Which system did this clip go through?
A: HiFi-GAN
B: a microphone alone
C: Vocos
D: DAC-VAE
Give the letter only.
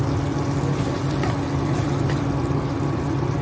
B